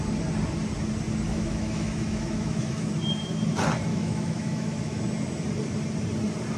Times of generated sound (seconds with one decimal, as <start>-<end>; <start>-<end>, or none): 1.3-2.9; 3.9-5.0